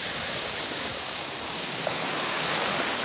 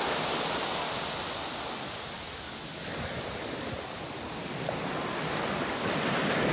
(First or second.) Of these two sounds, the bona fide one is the second